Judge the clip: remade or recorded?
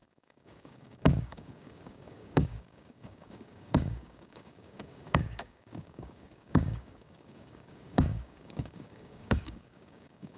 remade